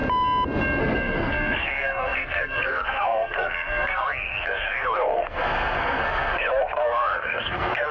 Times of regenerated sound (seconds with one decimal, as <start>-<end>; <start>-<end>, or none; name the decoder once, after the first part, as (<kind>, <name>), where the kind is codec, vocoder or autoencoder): 0.8-7.9 (codec, SNAC)